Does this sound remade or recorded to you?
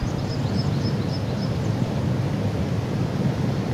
recorded